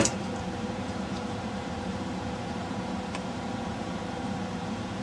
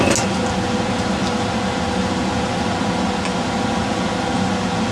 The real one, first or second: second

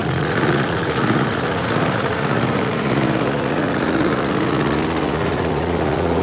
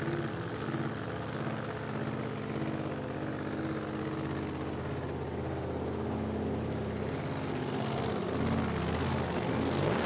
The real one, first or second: second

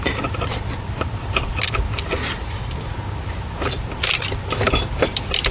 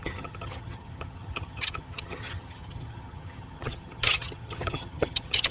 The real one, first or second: first